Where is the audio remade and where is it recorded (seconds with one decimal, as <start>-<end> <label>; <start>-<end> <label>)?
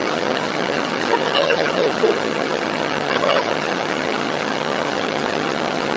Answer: 0.0-6.0 remade